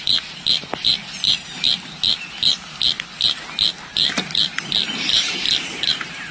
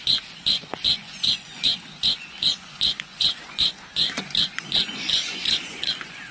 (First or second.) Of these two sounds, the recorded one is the first